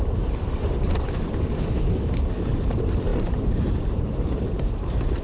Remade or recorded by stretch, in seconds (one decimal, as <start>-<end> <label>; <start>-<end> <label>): 0.0-5.2 remade